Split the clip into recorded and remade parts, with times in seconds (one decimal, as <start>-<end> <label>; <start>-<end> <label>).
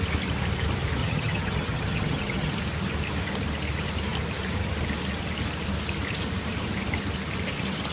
0.0-1.0 recorded; 1.0-2.5 remade; 2.5-7.9 recorded